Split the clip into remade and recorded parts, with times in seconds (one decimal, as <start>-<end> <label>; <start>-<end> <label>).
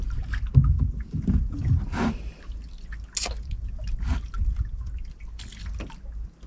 0.0-4.8 recorded; 4.8-5.6 remade; 5.6-6.5 recorded